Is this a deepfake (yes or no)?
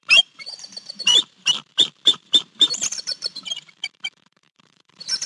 yes